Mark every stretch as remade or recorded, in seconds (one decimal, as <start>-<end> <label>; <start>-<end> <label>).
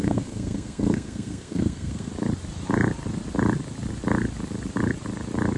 0.0-2.1 remade; 2.1-5.6 recorded